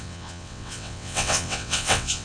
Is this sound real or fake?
fake